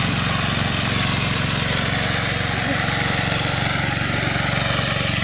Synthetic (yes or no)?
no